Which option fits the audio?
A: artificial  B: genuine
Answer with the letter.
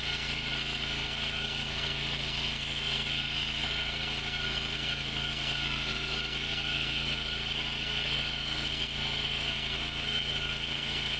A